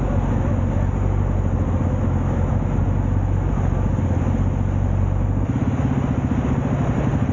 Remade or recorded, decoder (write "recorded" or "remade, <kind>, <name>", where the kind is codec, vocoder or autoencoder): recorded